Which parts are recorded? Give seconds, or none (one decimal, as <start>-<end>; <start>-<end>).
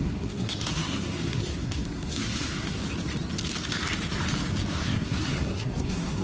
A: 2.8-4.7